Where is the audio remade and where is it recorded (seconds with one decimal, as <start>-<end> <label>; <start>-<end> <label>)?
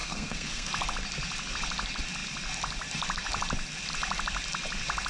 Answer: 0.0-0.7 remade; 0.7-5.1 recorded